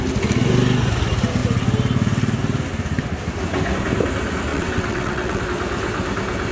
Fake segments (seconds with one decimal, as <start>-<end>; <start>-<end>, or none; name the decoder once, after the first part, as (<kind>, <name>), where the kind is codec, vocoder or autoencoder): 4.5-5.4 (vocoder, WaveNeXt)